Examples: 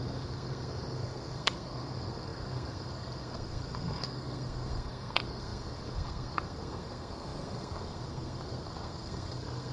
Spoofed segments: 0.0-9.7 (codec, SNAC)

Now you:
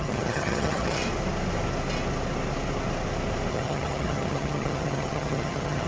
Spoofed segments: 0.0-1.0 (vocoder, HiFi-GAN); 3.5-5.9

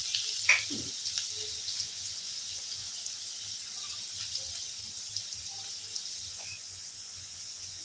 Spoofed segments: 1.6-3.0 (vocoder, Vocos); 6.3-7.8

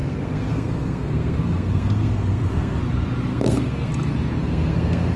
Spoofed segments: 0.0-2.8 (codec, SNAC); 3.3-3.9; 4.4-5.2

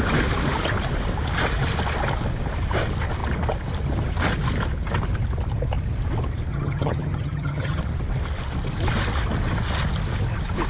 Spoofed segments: 6.5-7.8 (vocoder, HiFi-GAN)

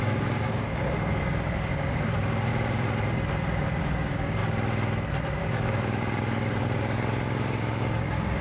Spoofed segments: 0.0-2.5 (codec, DAC); 3.8-4.4; 5.4-8.4

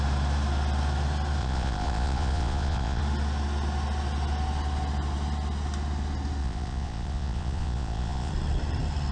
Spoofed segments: 1.4-3.0 (vocoder, Vocos); 6.4-8.3

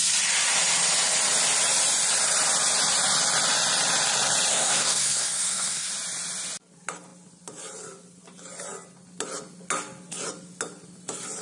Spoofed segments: 4.5-5.9 (codec, SNAC)